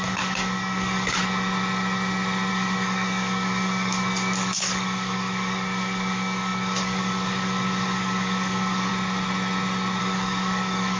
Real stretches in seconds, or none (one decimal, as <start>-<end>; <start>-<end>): 1.2-2.5; 8.9-10.0